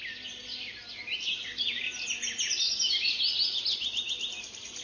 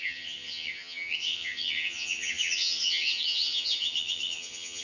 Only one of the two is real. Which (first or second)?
first